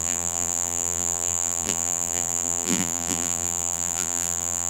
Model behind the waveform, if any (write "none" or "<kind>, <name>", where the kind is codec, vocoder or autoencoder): vocoder, BigVGAN v2